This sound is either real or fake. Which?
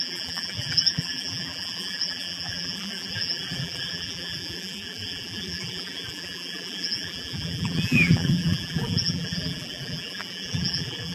fake